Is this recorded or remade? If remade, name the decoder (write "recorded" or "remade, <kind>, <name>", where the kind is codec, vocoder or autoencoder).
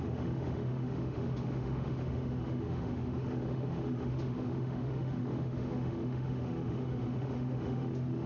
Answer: remade, autoencoder, DAC-VAE